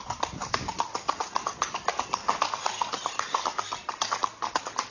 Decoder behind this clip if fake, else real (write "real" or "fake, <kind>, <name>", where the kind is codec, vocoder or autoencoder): real